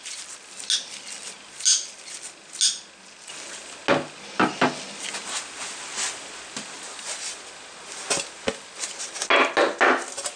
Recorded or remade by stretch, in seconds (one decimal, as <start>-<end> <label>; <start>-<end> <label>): 0.0-10.4 recorded